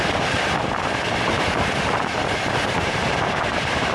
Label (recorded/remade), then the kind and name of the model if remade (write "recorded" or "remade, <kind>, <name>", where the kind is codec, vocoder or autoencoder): remade, vocoder, BigVGAN v2